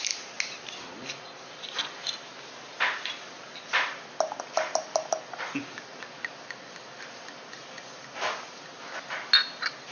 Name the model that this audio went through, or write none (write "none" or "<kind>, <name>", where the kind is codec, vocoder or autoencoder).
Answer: none